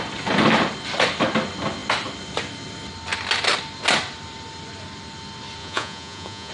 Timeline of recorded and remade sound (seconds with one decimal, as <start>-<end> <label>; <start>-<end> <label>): 0.0-5.6 recorded; 5.6-6.5 remade